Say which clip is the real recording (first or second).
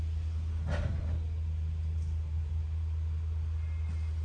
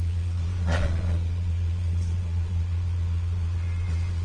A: first